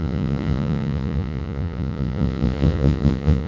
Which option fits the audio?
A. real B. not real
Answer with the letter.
B